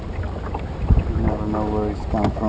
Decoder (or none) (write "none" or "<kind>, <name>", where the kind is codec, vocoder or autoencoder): none